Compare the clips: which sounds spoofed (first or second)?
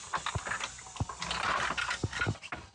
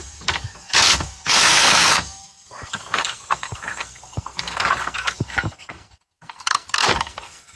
second